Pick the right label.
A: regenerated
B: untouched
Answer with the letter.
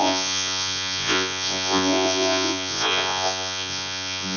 A